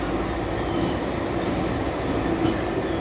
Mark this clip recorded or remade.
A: recorded